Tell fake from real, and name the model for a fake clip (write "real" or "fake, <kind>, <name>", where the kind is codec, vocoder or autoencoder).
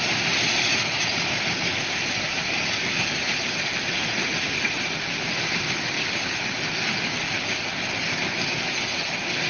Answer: real